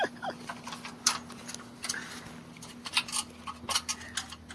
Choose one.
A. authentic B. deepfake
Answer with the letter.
A